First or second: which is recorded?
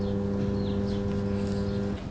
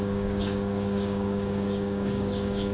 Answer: first